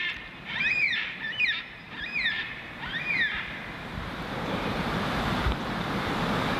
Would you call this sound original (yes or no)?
no